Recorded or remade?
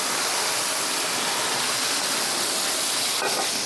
recorded